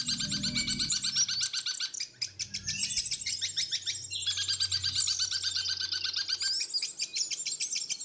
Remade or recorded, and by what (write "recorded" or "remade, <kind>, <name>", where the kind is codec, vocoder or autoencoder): recorded